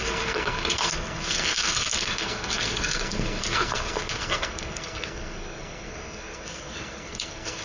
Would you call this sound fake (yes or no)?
yes